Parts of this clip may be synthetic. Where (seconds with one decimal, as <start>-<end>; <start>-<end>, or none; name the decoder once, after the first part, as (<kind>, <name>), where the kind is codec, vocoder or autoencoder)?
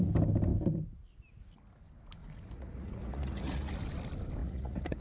2.2-3.7 (vocoder, Vocos); 4.4-5.0